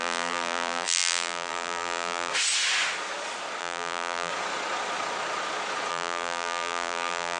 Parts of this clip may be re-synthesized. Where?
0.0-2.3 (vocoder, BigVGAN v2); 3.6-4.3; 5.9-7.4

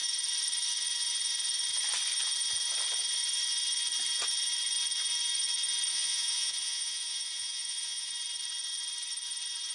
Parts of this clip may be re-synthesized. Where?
5.9-8.1 (vocoder, Vocos)

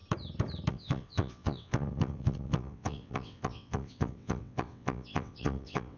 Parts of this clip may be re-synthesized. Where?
0.7-6.0 (vocoder, WaveNeXt)

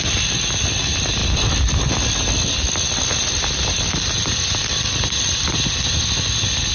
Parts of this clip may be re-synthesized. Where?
none

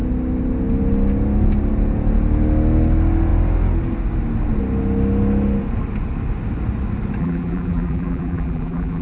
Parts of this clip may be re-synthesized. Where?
7.2-9.0 (vocoder, BigVGAN v2)